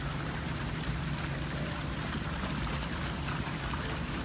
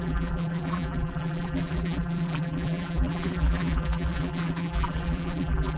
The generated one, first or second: second